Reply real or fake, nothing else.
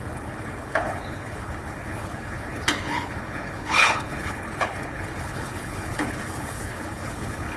fake